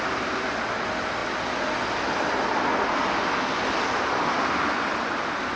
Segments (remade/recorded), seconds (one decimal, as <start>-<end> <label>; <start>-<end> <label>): 0.0-5.6 recorded